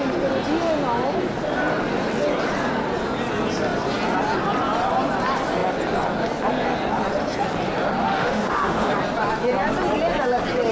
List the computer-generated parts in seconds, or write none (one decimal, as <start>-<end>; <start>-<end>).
8.0-8.9